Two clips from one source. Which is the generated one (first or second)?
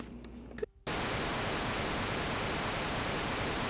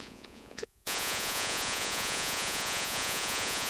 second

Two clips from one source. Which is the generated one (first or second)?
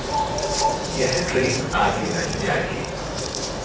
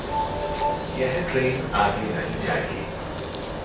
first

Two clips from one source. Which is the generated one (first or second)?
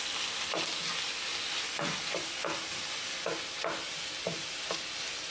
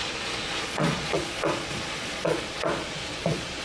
second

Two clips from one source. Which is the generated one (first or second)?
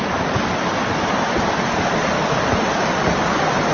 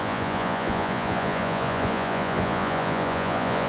second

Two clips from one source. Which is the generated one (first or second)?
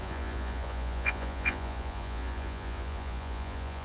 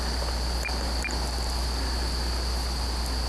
first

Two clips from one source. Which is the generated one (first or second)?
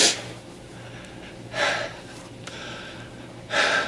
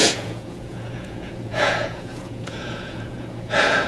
second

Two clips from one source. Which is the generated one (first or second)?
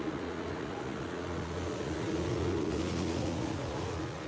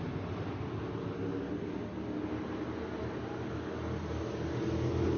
first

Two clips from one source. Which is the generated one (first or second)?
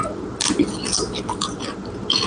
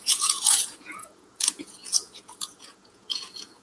second